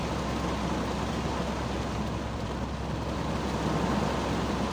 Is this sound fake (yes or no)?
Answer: yes